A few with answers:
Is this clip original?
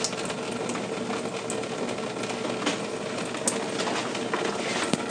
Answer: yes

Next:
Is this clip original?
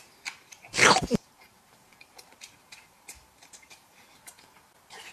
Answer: no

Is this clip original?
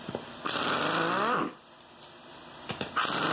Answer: yes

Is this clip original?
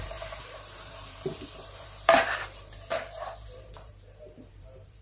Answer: no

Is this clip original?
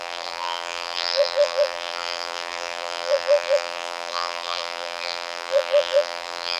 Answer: no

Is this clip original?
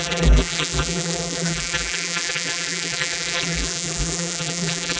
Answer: no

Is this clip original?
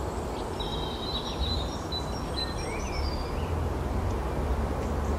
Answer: no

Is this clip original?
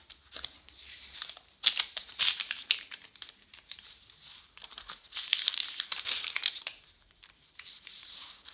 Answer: no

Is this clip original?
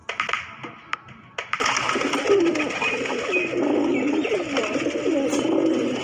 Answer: yes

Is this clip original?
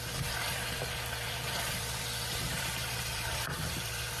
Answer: no